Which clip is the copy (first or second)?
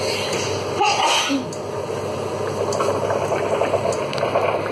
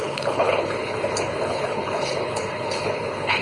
second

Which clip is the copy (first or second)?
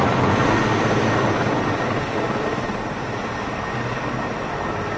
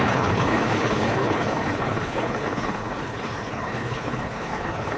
second